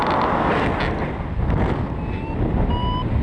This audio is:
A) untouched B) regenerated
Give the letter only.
A